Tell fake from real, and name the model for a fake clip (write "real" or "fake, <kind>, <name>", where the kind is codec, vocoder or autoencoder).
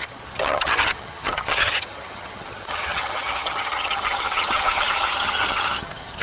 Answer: fake, vocoder, HiFi-GAN